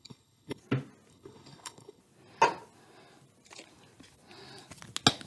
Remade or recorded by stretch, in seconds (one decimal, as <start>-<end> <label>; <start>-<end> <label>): 0.0-0.6 remade; 0.6-1.1 recorded; 1.1-2.0 remade; 2.0-5.3 recorded